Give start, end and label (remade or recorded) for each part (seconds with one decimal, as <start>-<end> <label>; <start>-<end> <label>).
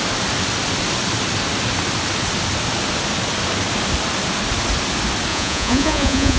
0.0-5.3 recorded; 5.3-6.4 remade